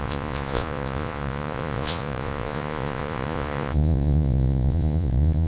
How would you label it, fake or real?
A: fake